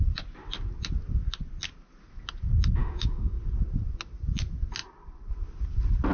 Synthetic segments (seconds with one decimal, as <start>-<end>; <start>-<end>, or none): 2.8-3.4